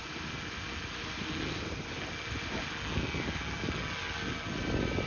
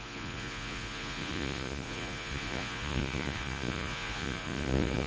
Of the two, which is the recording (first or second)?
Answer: first